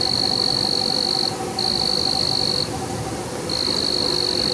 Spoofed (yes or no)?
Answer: no